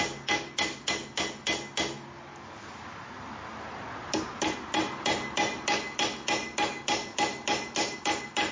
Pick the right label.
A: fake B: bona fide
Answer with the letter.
B